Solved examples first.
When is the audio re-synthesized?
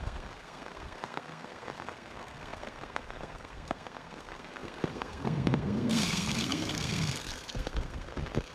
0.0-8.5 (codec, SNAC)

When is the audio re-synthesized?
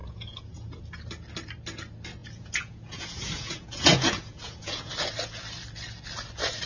0.0-0.8 (vocoder, Vocos); 2.2-4.9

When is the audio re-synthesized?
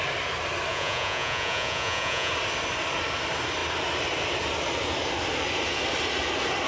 0.7-2.3 (vocoder, Vocos)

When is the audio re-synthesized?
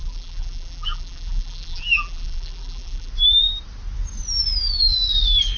0.0-3.1 (vocoder, BigVGAN v2)